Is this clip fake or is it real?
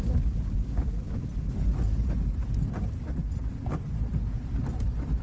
real